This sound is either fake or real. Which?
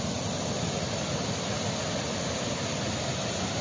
real